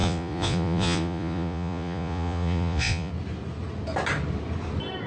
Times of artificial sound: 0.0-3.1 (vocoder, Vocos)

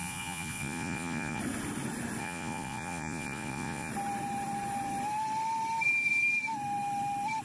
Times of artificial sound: 0.0-1.4 (vocoder, Vocos); 2.2-3.9